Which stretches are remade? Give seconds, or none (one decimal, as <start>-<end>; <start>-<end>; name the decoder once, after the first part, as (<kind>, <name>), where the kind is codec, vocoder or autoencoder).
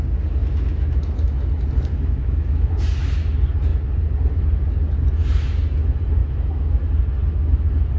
0.4-1.5 (autoencoder, DAC-VAE); 1.9-2.7; 6.2-6.8